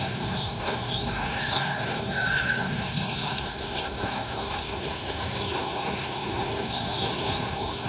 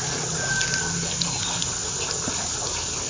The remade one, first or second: first